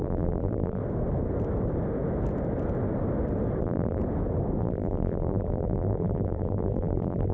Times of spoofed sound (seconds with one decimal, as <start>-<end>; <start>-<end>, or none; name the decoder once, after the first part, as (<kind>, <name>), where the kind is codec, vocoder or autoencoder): 0.0-0.8 (vocoder, BigVGAN v2); 3.6-4.0; 4.6-7.3